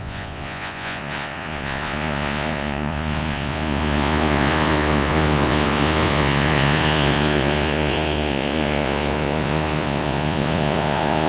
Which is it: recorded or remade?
remade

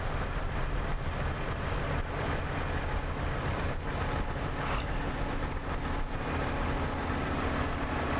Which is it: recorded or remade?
recorded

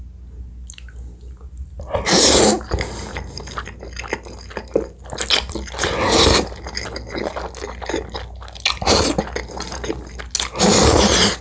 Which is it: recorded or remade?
recorded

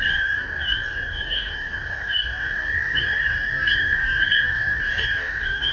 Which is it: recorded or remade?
remade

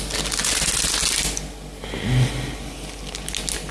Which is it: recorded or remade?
recorded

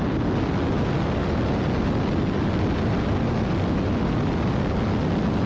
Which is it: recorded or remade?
recorded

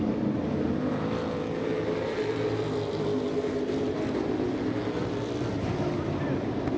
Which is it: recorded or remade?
recorded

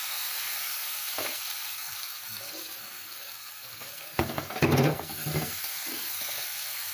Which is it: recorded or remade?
remade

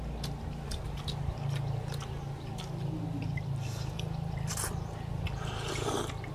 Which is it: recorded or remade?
recorded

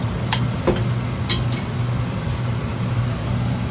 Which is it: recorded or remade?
recorded